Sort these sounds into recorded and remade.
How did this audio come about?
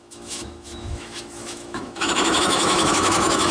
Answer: remade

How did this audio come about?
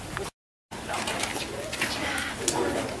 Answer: recorded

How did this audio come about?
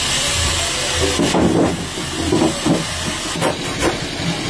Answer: recorded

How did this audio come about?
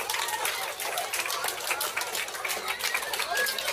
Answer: recorded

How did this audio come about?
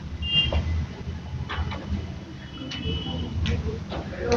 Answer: recorded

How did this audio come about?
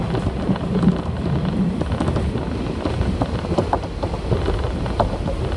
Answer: recorded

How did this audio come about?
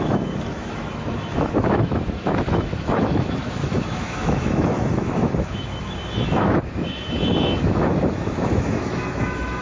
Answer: remade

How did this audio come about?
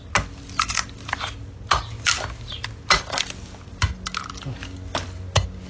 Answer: recorded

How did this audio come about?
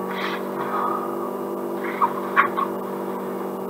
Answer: recorded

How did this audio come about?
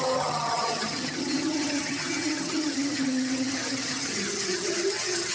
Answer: remade